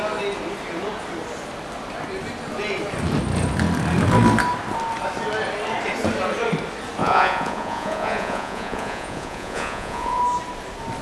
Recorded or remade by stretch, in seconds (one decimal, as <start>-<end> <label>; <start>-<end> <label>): 0.0-7.0 recorded; 7.0-10.2 remade; 10.2-11.0 recorded